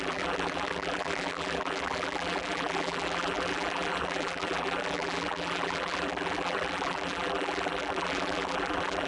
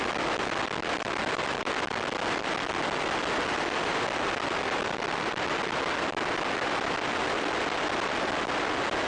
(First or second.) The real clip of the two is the second